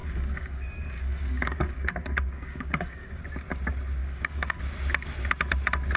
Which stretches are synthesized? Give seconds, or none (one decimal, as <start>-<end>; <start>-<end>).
0.0-3.2; 4.0-4.6